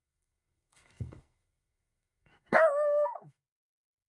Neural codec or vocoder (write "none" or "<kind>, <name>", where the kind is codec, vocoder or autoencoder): codec, SNAC